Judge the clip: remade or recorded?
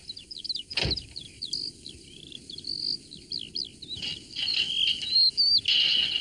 recorded